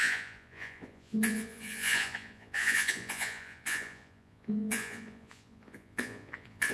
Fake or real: fake